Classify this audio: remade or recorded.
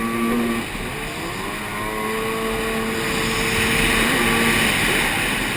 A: recorded